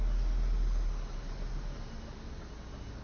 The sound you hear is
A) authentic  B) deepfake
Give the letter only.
A